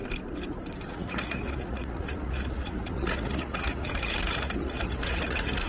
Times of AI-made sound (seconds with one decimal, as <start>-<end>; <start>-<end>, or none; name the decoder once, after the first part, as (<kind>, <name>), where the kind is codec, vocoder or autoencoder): 0.9-5.7 (vocoder, Vocos)